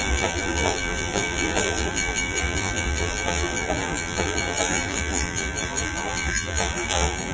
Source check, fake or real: fake